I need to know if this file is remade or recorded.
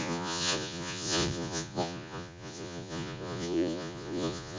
remade